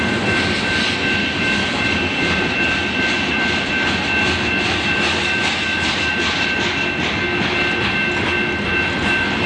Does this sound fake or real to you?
real